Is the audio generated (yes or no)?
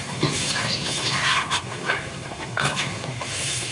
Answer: yes